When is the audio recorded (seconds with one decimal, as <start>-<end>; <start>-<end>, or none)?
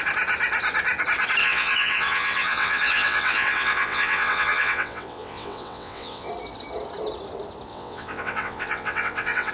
0.0-1.4; 6.3-7.7